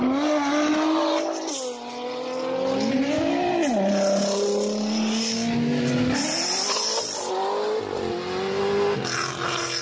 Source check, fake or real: real